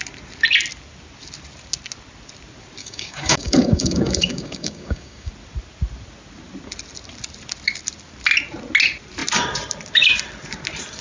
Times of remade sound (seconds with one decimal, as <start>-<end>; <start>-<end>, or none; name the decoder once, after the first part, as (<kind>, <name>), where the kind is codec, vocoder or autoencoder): 2.8-5.3 (codec, DAC)